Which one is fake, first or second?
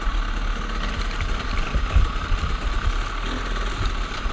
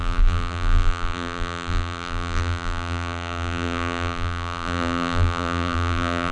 second